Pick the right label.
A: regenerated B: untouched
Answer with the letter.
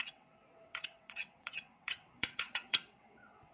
A